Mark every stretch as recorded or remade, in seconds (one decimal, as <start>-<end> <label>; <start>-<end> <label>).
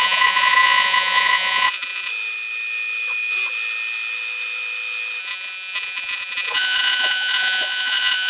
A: 0.0-2.1 remade; 2.1-5.2 recorded; 5.2-8.3 remade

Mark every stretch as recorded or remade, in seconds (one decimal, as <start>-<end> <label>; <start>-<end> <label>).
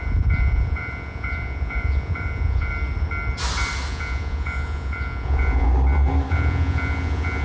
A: 0.0-2.7 remade; 2.7-3.9 recorded; 3.9-5.7 remade; 5.7-6.3 recorded; 6.3-7.4 remade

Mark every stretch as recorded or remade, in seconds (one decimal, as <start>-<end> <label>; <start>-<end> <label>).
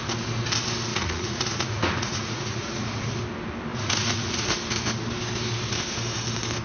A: 0.0-0.9 recorded; 0.9-3.2 remade; 3.2-3.7 recorded; 3.7-4.5 remade; 4.5-6.6 recorded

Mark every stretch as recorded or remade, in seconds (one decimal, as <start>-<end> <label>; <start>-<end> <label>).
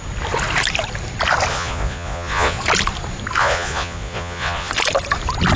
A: 0.0-1.5 recorded; 1.5-2.6 remade; 2.6-3.4 recorded; 3.4-4.7 remade; 4.7-5.6 recorded